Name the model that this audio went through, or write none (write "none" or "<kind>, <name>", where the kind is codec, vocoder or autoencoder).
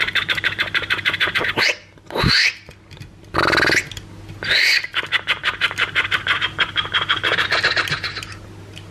none